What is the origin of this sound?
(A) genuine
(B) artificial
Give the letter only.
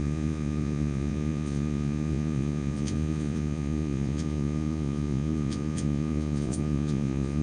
B